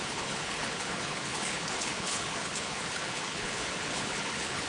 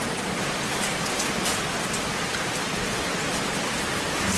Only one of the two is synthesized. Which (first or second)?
first